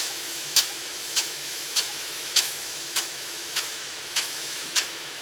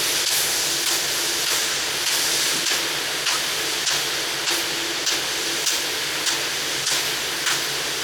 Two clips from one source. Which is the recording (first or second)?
second